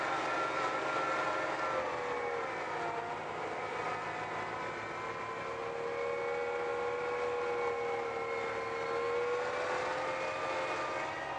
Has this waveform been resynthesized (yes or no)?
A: no